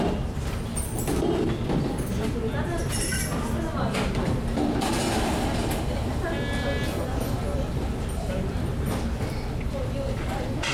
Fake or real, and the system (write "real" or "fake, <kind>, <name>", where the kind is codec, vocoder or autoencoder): real